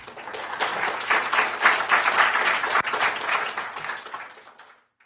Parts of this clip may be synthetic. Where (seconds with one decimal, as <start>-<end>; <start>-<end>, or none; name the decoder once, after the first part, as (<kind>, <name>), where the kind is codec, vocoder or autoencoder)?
none